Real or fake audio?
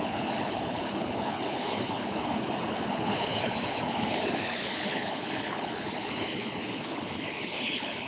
fake